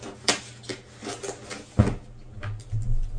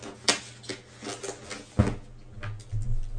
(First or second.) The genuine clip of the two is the second